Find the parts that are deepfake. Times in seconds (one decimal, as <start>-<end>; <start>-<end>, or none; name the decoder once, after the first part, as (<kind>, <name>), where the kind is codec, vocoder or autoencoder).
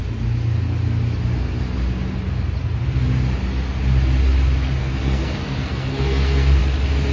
4.8-6.6 (codec, SNAC)